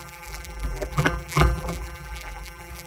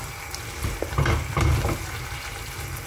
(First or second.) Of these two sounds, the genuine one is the second